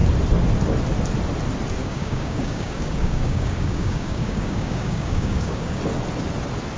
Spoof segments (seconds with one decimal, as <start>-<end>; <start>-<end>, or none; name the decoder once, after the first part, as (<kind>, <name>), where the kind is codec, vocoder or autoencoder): 1.8-5.8 (codec, DAC)